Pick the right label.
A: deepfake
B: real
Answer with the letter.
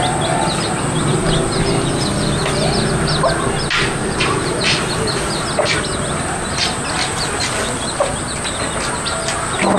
B